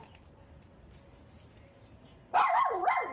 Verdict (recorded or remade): recorded